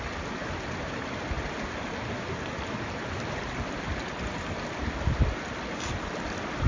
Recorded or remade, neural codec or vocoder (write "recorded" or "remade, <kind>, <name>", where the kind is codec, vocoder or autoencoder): recorded